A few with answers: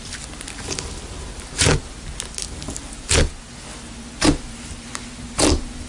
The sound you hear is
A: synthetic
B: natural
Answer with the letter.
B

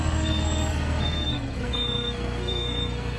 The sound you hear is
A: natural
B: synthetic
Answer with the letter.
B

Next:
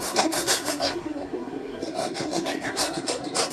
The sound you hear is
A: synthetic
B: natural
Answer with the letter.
A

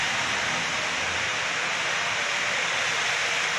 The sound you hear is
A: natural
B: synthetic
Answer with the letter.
A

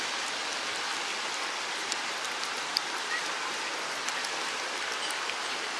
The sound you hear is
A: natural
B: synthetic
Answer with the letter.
A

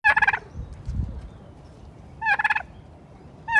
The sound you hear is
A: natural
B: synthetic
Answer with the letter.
A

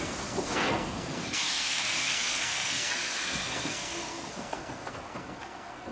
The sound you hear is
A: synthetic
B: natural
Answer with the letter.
A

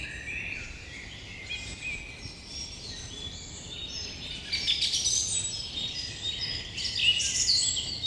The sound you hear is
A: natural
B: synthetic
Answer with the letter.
A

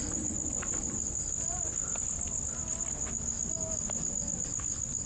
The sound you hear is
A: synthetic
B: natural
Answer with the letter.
B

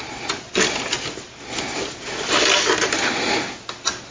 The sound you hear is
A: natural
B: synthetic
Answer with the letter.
A